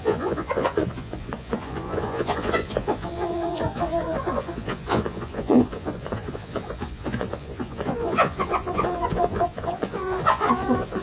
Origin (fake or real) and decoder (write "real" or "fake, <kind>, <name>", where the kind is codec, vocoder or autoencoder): fake, vocoder, Vocos